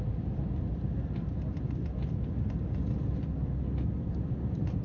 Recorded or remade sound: remade